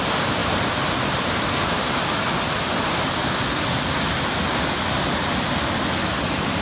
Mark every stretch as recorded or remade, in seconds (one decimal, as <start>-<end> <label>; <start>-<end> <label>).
0.0-6.6 recorded